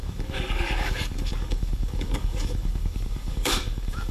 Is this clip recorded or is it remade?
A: remade